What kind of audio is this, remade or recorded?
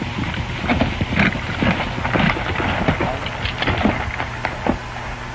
recorded